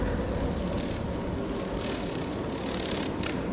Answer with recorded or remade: recorded